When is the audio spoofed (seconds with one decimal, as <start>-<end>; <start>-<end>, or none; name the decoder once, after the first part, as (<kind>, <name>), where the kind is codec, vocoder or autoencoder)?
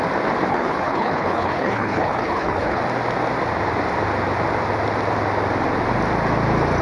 0.5-2.8 (codec, HILCodec)